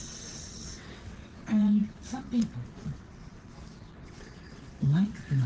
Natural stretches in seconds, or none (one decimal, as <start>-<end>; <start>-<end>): none